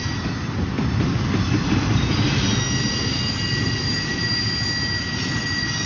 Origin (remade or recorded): recorded